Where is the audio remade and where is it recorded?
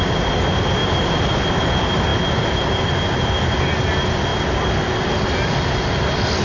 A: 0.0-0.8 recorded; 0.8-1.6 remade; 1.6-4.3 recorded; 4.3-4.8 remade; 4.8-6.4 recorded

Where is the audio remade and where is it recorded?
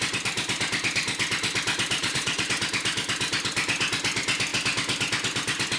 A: 0.0-2.0 recorded; 2.0-2.5 remade; 2.5-5.8 recorded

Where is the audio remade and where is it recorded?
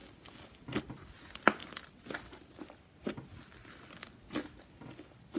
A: 0.0-5.4 recorded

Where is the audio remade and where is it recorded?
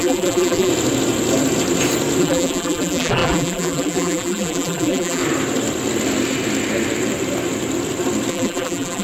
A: 0.0-0.7 remade; 0.7-2.2 recorded; 2.2-5.2 remade; 5.2-8.3 recorded; 8.3-9.0 remade